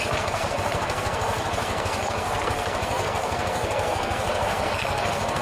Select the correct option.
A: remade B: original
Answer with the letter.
A